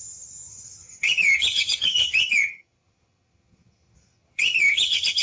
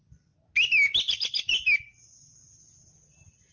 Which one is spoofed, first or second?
first